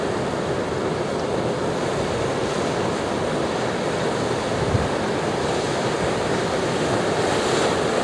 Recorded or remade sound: recorded